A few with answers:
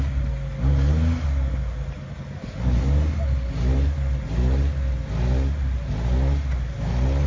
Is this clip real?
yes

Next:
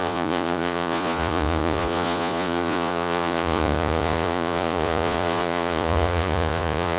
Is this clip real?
no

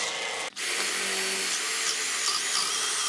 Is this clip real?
yes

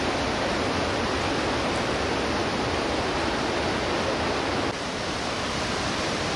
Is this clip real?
yes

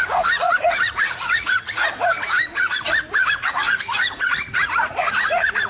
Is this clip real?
no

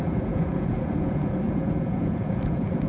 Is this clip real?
no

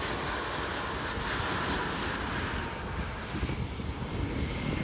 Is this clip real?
yes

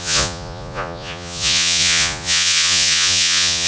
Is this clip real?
no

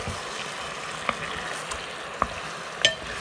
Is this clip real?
yes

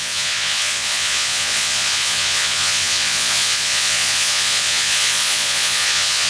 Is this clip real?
no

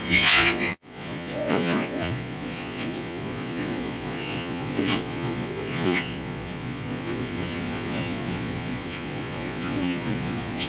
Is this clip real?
no